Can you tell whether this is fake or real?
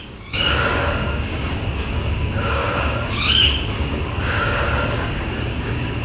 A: fake